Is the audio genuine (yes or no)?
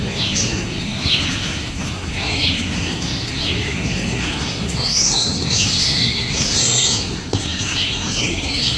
no